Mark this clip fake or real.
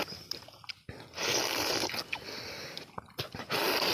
real